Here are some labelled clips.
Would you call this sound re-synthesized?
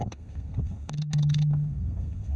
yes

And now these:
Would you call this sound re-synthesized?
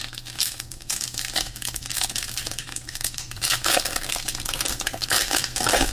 yes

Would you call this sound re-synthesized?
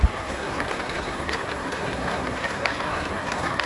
yes